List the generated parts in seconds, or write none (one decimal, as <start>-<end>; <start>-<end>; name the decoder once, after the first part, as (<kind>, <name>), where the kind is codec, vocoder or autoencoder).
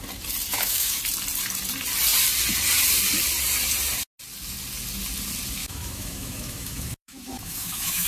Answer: 0.5-1.0 (autoencoder, DAC-VAE); 5.6-8.1